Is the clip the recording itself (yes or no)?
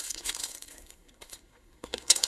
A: no